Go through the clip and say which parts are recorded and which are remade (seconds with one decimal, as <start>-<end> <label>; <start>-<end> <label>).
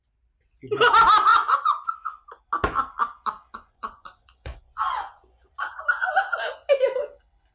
0.0-1.3 recorded; 1.3-2.3 remade; 2.3-3.0 recorded; 3.0-5.5 remade; 5.5-7.5 recorded